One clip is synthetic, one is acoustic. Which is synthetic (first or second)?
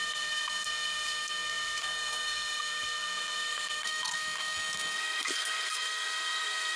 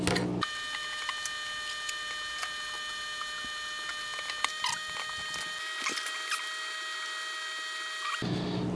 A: first